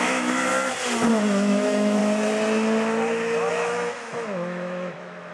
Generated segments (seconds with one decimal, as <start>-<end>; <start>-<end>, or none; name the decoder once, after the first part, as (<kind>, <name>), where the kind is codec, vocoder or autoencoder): 0.0-0.5 (autoencoder, DAC-VAE); 1.1-2.0; 3.5-5.3